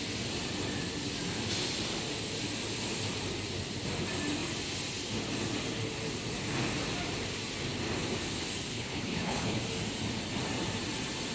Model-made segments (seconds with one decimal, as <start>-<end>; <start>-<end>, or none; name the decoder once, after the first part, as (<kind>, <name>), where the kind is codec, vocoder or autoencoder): 8.7-9.6 (codec, HILCodec)